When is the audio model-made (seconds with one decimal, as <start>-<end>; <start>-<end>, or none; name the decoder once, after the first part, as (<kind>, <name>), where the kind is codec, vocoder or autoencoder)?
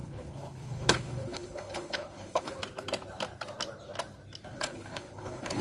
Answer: 0.0-2.6 (codec, HILCodec); 4.5-5.6